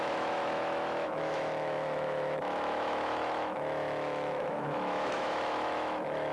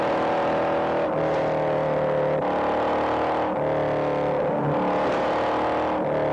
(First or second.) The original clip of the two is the second